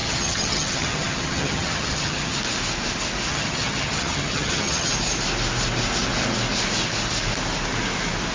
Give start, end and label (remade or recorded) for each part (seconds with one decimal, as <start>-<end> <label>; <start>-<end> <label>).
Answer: 0.0-2.4 remade; 2.4-3.3 recorded; 3.3-4.9 remade; 4.9-8.3 recorded